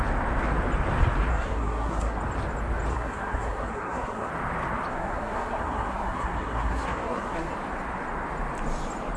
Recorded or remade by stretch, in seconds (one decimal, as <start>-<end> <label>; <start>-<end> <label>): 0.0-1.3 recorded; 1.3-2.2 remade; 2.2-2.9 recorded; 2.9-4.3 remade; 4.3-4.9 recorded; 4.9-7.5 remade; 7.5-9.2 recorded